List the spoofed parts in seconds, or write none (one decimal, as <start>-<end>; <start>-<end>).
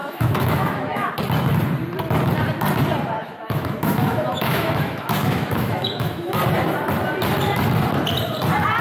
0.0-1.1; 3.2-6.4